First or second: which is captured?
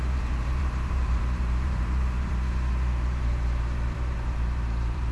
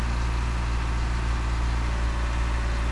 second